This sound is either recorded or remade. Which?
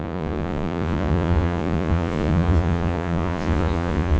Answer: remade